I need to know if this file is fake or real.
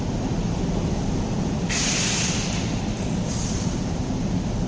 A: real